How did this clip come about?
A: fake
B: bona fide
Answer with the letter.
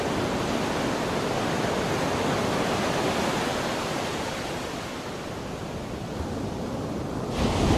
B